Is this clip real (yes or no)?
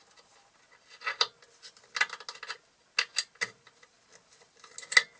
yes